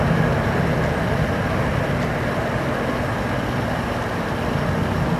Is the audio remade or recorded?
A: recorded